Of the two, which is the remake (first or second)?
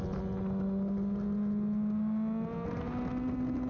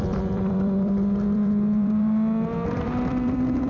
second